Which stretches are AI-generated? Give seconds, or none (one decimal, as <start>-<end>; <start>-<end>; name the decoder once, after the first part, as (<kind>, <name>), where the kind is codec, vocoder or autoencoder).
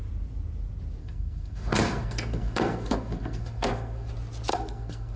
1.0-4.1 (codec, SNAC); 4.5-5.2